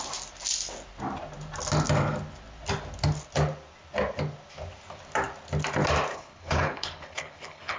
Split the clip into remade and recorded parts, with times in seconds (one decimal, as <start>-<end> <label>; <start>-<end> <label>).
0.0-6.1 recorded; 6.1-7.8 remade